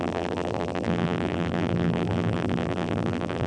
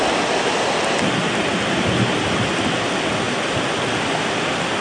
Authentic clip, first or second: second